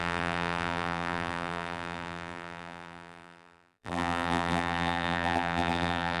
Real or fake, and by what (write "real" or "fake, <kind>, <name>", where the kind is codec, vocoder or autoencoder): fake, vocoder, BigVGAN v2